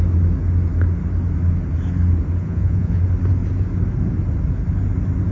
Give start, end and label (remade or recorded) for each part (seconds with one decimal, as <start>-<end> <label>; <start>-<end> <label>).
0.0-2.4 recorded; 2.4-3.0 remade; 3.0-5.3 recorded